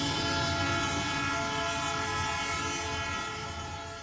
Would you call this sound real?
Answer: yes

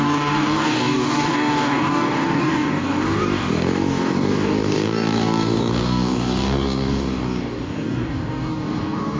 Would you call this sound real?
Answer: no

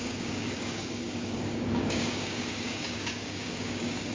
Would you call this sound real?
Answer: no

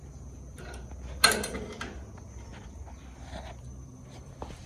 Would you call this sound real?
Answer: yes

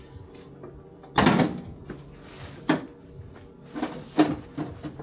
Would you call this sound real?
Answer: yes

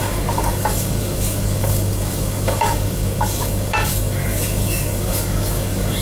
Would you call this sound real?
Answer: no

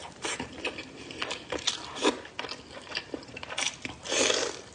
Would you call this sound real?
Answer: yes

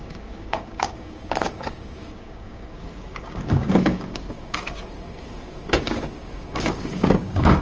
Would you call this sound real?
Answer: no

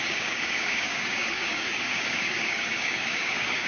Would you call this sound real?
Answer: no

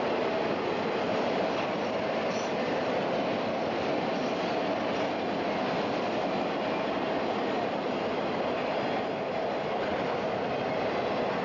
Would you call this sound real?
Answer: yes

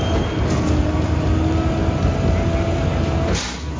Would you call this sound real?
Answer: yes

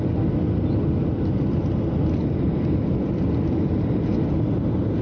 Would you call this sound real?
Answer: yes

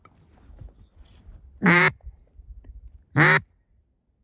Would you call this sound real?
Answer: yes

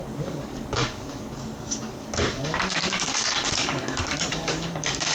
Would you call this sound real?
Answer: no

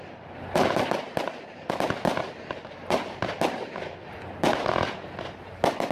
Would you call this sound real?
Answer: yes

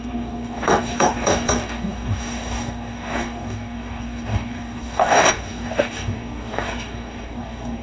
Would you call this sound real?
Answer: no